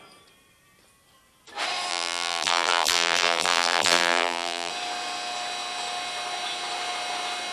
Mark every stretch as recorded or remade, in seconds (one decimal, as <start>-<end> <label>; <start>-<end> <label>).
0.0-1.9 recorded; 1.9-4.7 remade; 4.7-7.5 recorded